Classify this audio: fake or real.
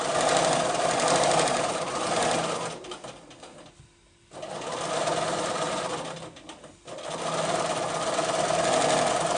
real